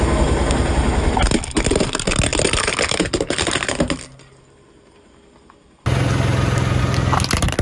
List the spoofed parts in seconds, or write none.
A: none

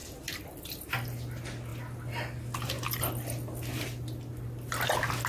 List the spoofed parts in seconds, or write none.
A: none

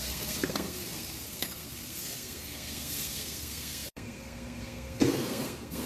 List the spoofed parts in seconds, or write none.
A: 0.0-5.9 (codec, SNAC)